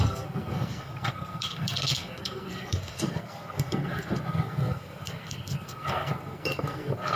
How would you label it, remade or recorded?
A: remade